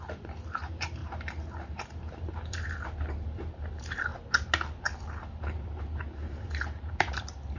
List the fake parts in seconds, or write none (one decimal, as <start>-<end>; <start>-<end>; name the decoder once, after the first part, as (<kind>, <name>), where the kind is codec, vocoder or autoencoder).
0.0-4.1 (vocoder, BigVGAN v2); 5.0-7.6